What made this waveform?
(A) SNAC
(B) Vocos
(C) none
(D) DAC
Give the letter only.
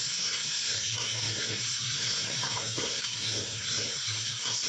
A